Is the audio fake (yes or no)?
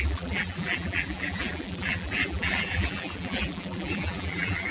yes